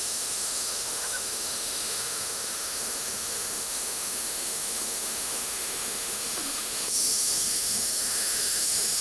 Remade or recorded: remade